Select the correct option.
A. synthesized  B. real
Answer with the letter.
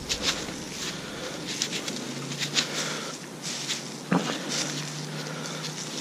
B